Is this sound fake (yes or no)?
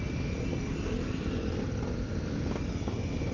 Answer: no